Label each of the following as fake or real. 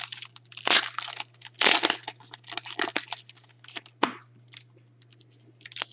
real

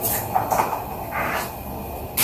real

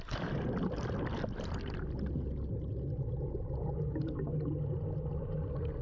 real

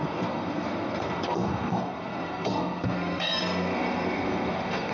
fake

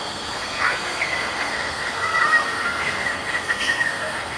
fake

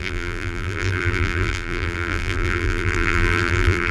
fake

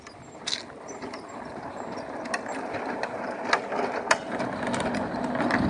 real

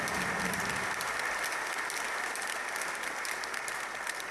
real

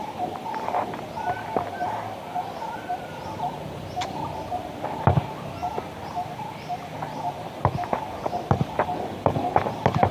real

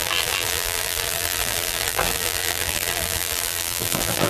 fake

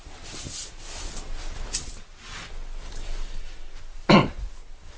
real